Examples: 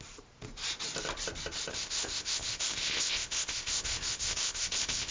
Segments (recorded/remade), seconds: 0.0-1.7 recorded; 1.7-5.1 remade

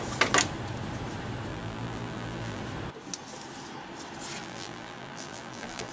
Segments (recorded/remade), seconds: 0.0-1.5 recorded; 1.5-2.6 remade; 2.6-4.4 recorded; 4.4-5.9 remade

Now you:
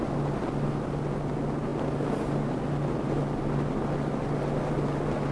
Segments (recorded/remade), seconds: 0.0-5.3 recorded